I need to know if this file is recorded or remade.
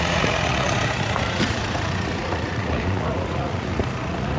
remade